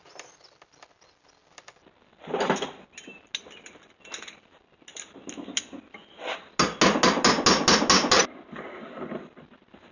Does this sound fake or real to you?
real